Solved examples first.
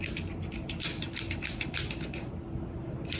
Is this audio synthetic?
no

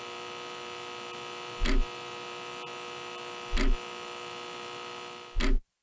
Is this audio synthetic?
no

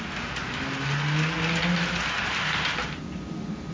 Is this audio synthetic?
no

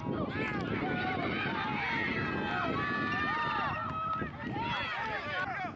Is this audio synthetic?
no